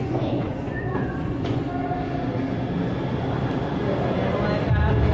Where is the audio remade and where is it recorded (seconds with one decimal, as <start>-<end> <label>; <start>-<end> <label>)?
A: 0.0-1.6 remade; 1.6-5.1 recorded